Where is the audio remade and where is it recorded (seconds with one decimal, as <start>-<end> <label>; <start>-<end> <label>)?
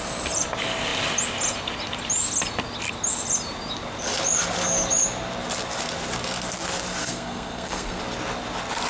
0.0-7.0 recorded; 7.0-8.0 remade; 8.0-8.9 recorded